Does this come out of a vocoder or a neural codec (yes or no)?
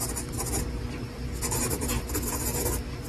no